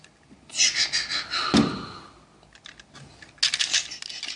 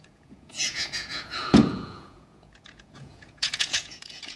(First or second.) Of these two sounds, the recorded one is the first